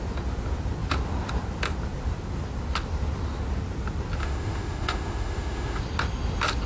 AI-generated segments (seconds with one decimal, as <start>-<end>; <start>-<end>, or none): 4.2-5.8

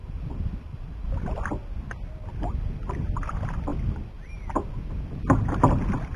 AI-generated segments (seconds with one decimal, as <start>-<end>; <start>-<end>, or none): none

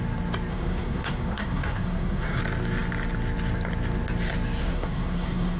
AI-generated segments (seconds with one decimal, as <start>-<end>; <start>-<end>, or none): 0.5-2.4; 4.6-5.6

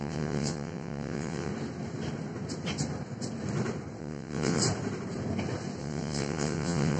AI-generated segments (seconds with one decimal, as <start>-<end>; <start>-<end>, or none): 0.0-1.5; 4.0-4.6; 5.8-7.0

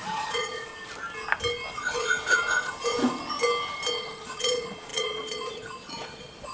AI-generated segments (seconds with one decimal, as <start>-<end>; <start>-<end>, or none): 0.0-0.7; 1.7-2.8; 4.0-6.5

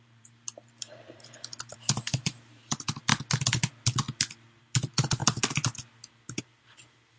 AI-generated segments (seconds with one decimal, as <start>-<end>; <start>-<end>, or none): 0.0-3.1; 4.6-5.2; 6.4-7.2

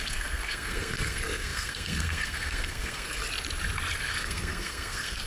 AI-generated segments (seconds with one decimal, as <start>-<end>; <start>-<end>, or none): 0.0-3.2; 4.1-5.3